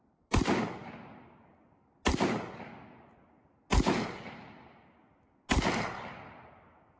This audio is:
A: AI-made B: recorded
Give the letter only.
B